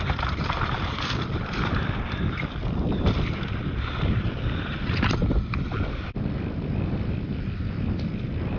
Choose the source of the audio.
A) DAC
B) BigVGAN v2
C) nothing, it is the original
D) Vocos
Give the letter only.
B